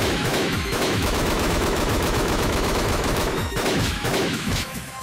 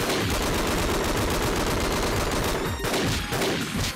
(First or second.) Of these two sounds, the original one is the second